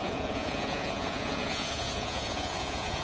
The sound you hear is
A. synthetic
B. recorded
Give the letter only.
A